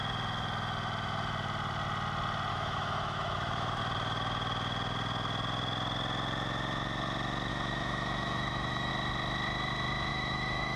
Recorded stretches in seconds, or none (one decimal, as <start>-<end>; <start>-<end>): 0.0-2.5; 3.8-7.5; 8.9-10.1